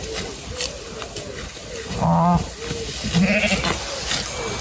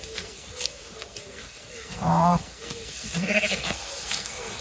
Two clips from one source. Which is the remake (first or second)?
second